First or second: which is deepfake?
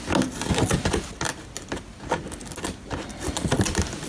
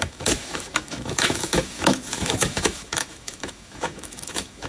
second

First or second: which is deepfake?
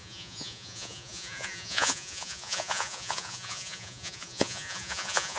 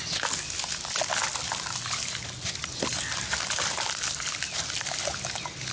first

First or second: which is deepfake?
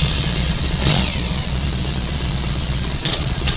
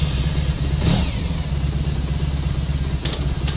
first